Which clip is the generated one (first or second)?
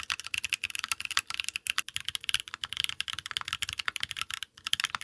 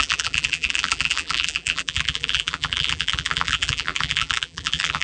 second